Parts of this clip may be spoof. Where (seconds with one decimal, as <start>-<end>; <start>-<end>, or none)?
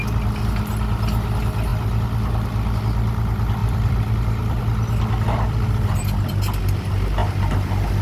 3.6-4.6